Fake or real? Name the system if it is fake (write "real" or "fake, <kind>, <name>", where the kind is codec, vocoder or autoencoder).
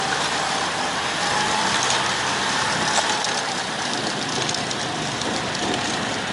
real